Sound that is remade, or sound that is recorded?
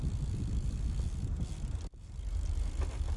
recorded